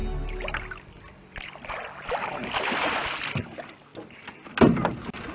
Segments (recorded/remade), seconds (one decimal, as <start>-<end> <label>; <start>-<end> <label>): 0.0-5.3 recorded